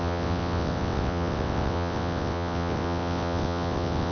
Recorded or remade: remade